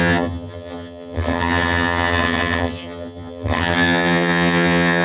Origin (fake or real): fake